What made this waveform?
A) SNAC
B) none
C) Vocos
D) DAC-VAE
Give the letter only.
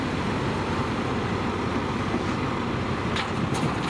B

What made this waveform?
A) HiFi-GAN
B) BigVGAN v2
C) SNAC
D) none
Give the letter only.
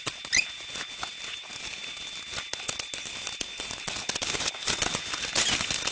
D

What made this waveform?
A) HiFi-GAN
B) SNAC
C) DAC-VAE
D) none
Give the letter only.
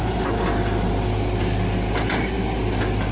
D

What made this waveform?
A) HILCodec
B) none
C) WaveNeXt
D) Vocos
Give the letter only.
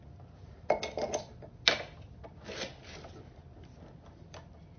B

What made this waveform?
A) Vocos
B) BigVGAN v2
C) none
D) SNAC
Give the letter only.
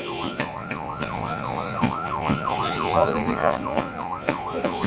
A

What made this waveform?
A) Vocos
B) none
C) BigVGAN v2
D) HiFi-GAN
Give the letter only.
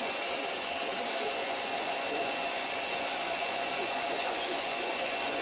A